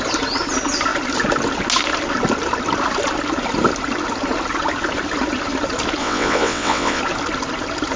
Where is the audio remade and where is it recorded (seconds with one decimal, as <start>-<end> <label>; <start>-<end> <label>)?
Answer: 0.0-6.0 recorded; 6.0-7.0 remade; 7.0-8.0 recorded